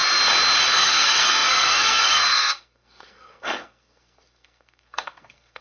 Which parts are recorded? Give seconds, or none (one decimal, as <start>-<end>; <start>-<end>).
0.0-0.7